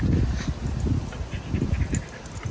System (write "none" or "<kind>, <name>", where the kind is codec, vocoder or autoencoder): none